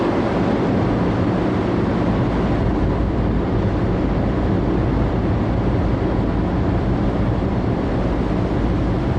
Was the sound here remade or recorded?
recorded